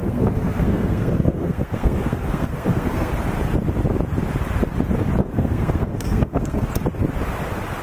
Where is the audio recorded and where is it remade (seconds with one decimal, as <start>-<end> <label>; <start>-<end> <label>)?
0.0-3.1 remade; 3.1-5.2 recorded; 5.2-6.7 remade; 6.7-7.8 recorded